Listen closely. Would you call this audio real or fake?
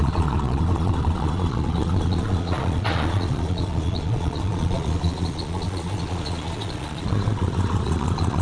fake